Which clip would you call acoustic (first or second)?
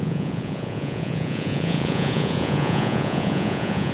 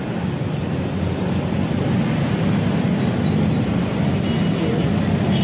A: second